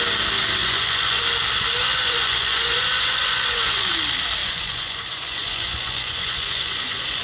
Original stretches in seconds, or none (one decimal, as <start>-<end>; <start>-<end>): 0.0-0.6; 1.2-1.8; 3.9-4.4